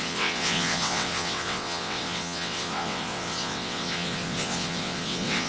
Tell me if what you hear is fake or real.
fake